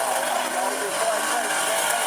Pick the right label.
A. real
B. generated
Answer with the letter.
A